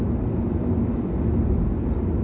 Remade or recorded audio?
recorded